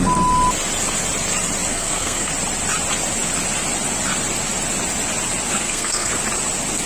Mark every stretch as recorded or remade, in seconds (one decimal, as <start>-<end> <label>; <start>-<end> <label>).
0.0-1.7 recorded; 1.7-2.3 remade; 2.3-5.5 recorded; 5.5-6.1 remade; 6.1-6.9 recorded